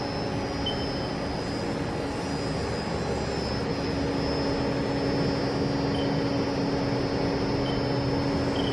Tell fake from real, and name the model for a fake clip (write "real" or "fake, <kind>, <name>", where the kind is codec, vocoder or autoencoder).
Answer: real